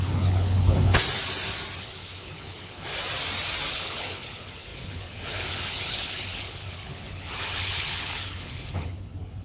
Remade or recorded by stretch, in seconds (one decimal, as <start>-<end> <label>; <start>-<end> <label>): 0.0-1.0 remade; 1.0-1.8 recorded; 1.8-2.9 remade; 2.9-3.7 recorded; 3.7-9.4 remade